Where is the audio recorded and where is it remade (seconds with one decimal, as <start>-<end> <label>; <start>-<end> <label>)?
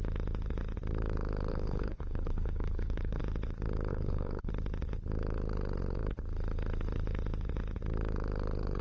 0.0-1.5 recorded; 1.5-3.2 remade; 3.2-3.9 recorded; 3.9-4.5 remade; 4.5-8.8 recorded